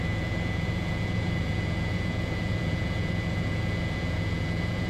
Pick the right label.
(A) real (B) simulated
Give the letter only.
B